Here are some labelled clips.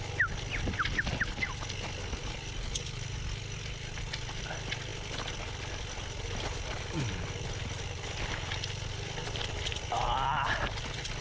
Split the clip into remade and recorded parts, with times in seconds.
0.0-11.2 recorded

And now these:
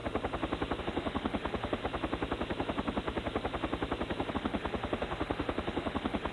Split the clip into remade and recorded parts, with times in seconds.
0.0-0.8 recorded; 0.8-1.8 remade; 1.8-4.3 recorded; 4.3-6.3 remade

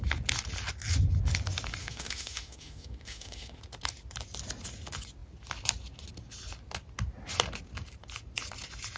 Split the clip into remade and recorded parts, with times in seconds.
0.0-1.8 recorded; 1.8-3.6 remade; 3.6-9.0 recorded

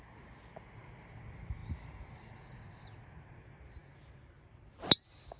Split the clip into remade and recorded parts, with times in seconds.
0.0-5.4 recorded

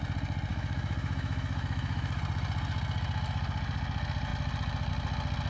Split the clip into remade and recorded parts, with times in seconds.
0.0-0.5 recorded; 0.5-2.2 remade; 2.2-5.5 recorded